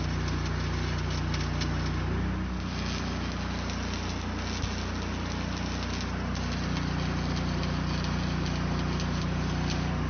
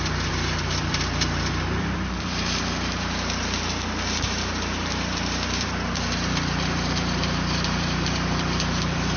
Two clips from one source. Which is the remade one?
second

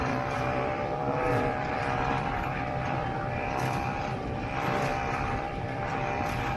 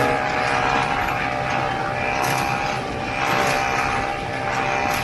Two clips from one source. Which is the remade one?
first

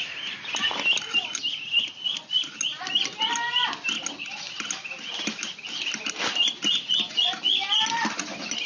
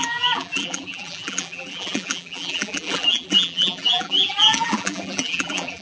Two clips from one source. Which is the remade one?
second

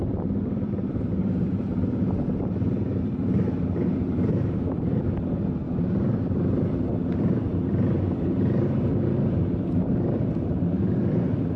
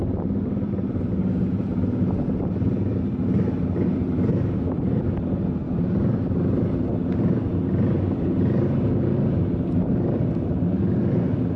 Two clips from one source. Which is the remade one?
first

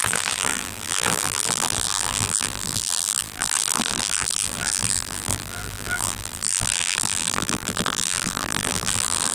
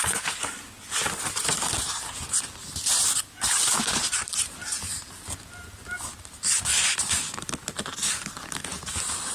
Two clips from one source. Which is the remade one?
first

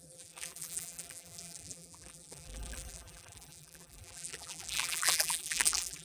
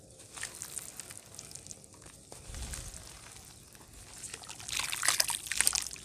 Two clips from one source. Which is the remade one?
first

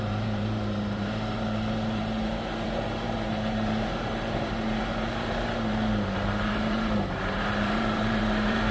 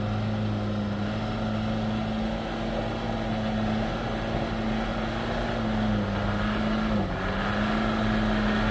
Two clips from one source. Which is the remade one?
first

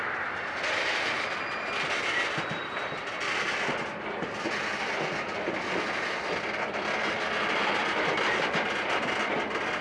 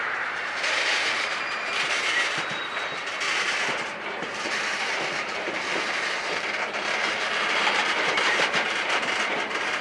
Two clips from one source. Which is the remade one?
second